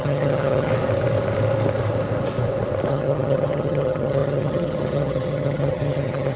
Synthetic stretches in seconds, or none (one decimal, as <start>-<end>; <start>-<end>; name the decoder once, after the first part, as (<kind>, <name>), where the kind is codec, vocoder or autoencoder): 0.0-0.7 (vocoder, HiFi-GAN); 2.9-6.4